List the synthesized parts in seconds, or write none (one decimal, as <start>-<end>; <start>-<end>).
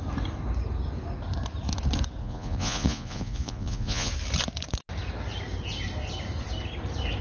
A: 2.2-4.1